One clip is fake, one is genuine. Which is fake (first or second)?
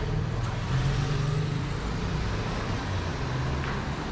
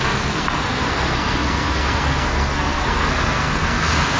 second